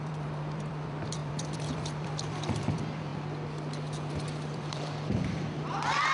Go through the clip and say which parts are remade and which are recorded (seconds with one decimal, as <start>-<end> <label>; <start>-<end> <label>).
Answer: 0.0-3.1 remade; 3.1-4.1 recorded; 4.1-6.1 remade